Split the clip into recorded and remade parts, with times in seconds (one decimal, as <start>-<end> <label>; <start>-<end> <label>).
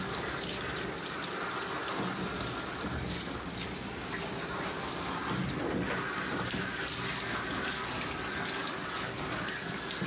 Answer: 0.0-10.1 recorded